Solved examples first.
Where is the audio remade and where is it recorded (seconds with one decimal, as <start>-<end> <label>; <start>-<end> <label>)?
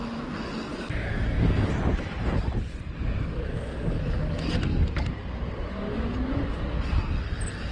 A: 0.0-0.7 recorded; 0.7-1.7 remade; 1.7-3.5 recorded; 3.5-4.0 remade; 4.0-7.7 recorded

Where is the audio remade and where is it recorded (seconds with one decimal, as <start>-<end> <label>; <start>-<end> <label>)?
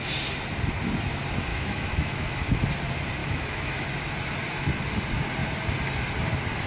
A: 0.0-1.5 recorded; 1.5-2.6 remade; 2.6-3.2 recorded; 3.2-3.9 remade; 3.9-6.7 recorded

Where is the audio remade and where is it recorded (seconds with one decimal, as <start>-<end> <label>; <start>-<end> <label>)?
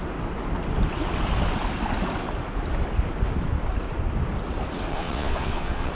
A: 0.0-4.9 recorded; 4.9-5.9 remade